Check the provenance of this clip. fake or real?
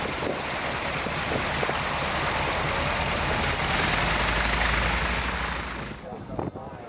real